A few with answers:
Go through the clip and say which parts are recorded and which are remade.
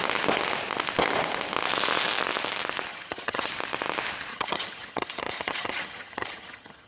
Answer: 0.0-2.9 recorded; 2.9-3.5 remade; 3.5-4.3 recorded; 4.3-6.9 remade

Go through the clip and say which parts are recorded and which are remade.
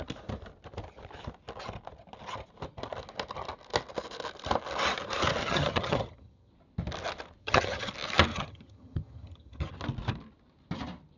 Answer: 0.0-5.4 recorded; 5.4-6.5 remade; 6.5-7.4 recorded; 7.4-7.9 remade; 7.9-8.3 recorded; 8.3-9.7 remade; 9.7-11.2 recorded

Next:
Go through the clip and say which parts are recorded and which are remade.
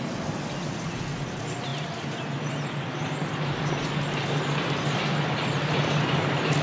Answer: 0.0-6.6 recorded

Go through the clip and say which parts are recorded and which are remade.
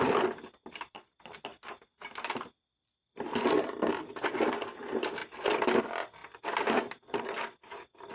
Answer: 0.0-8.1 recorded